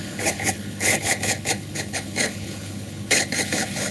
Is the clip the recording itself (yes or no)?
no